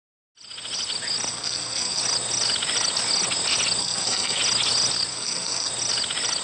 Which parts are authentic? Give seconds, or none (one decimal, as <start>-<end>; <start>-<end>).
0.0-1.3; 2.0-3.8; 4.4-5.1; 5.7-6.4